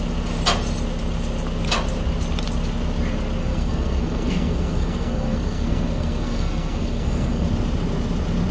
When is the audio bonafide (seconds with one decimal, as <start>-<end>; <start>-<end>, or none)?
0.0-3.4; 7.5-8.5